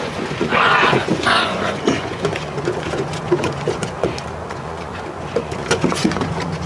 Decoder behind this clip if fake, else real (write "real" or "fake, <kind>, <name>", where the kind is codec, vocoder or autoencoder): fake, vocoder, Vocos